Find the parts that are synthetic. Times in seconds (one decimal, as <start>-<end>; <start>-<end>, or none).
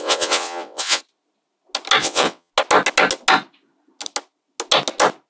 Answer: 0.0-1.0; 2.0-2.5